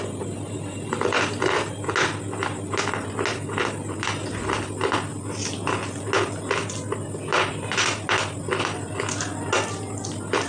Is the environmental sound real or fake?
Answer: real